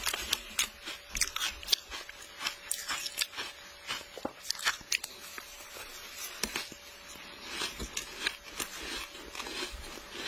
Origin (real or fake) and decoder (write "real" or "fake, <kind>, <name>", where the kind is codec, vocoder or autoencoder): real